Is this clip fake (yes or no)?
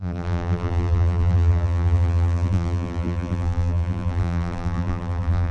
yes